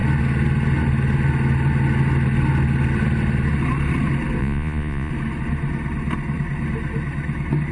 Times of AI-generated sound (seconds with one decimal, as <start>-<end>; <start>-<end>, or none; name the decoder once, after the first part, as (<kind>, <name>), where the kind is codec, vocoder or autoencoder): 4.4-5.1 (vocoder, Vocos)